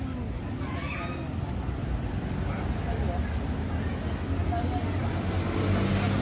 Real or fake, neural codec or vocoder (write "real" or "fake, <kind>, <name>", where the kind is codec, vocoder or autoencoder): real